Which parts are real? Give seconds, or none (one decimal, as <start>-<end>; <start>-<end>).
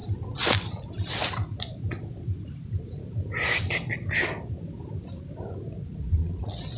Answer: 0.0-6.2